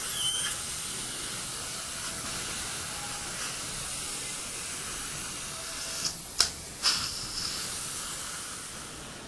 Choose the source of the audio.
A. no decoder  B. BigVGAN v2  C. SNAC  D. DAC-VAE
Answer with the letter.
A